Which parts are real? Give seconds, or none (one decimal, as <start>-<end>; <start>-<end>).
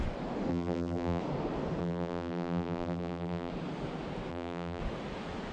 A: 0.0-0.5; 1.2-1.8; 3.5-4.3; 4.8-5.5